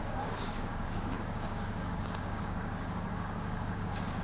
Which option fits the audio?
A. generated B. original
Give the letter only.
A